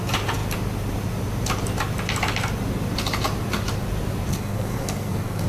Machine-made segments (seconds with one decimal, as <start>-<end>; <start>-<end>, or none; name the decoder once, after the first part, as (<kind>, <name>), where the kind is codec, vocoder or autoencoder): 4.3-5.5 (codec, SNAC)